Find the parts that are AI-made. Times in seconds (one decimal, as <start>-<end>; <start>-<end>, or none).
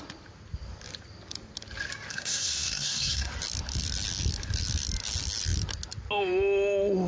2.1-3.3